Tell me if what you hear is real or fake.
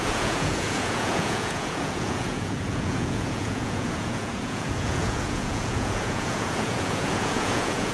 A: fake